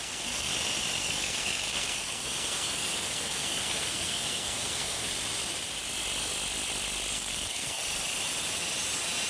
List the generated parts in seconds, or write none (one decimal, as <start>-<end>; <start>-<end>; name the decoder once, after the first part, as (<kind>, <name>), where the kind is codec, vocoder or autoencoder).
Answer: 0.0-0.5 (codec, SNAC); 1.0-5.1; 7.1-7.8